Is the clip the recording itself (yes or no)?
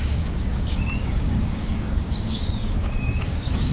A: no